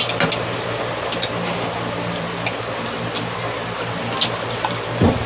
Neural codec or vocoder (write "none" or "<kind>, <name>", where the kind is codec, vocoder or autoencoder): none